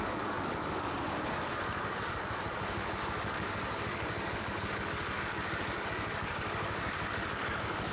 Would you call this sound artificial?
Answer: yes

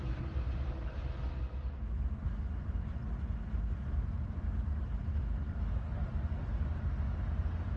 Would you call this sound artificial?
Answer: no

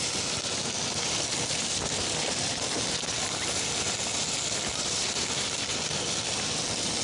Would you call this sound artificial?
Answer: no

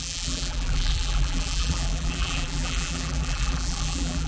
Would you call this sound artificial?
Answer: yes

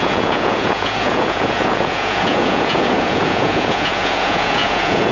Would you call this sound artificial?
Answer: yes